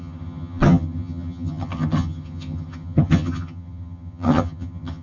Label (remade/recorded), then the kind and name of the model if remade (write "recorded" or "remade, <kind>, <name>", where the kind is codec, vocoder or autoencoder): remade, vocoder, HiFi-GAN